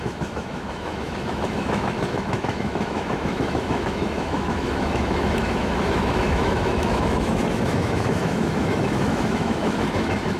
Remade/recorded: remade